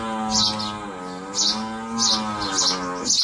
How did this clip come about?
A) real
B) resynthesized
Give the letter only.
A